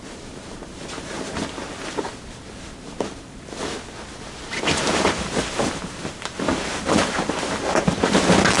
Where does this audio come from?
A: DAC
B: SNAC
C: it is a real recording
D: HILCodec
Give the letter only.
C